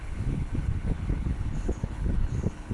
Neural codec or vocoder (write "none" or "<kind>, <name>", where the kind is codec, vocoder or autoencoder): codec, HILCodec